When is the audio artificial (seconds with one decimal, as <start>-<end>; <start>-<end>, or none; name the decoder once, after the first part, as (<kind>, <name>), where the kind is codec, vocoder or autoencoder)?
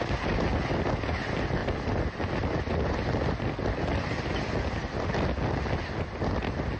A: none